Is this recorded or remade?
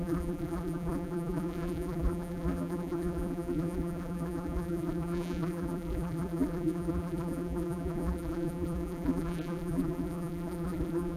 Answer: remade